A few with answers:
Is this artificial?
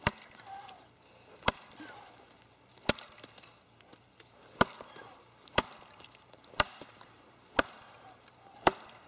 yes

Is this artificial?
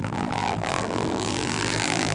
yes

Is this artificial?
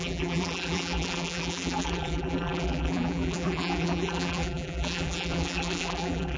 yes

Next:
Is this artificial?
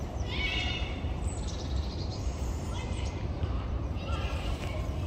yes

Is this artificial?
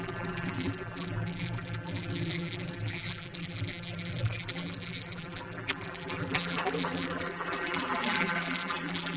yes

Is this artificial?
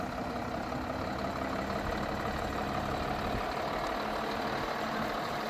no